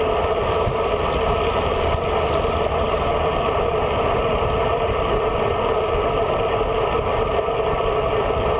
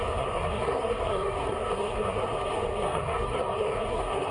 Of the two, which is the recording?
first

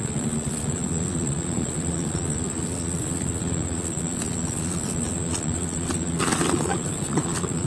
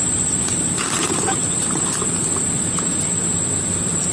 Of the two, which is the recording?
second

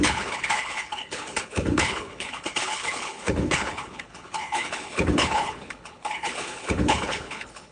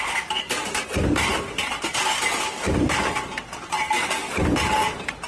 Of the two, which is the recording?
second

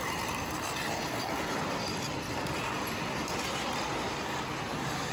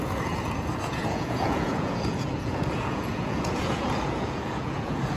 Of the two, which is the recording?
first